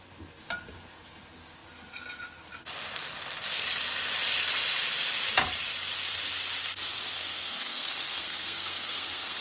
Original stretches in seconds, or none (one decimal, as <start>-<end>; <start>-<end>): 0.0-7.1

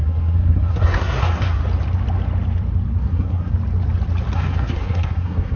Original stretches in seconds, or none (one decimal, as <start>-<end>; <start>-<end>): 1.6-3.0; 3.5-4.3

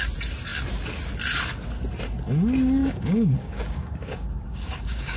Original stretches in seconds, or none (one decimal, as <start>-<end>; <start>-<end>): 0.0-2.8

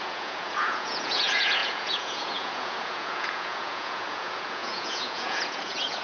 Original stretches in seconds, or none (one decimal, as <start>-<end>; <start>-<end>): none

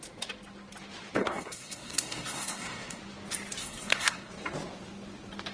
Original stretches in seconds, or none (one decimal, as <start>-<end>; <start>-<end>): 0.0-1.2; 3.0-3.6; 4.3-5.5